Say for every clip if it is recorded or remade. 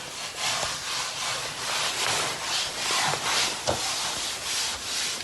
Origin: recorded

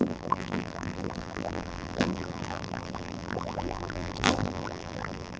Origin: remade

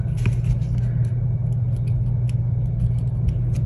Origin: recorded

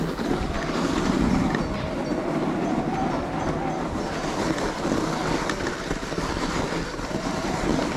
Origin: recorded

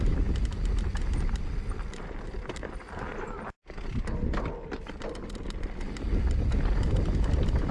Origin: recorded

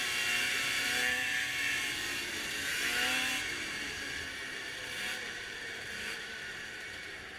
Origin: remade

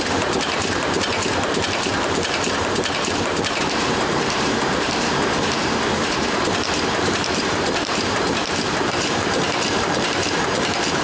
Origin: remade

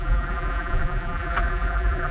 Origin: remade